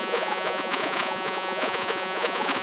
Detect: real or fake fake